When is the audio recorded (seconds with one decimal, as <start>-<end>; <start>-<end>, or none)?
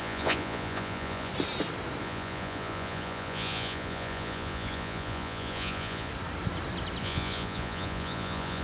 1.3-2.0; 6.1-7.0